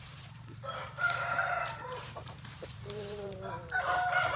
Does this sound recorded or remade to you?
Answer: remade